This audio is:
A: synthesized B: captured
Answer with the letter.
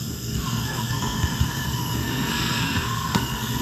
A